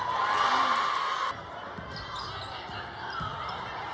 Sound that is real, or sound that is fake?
real